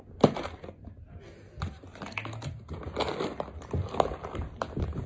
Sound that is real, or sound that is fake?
real